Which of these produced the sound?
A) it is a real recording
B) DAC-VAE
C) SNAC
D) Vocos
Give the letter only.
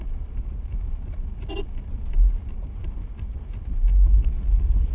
A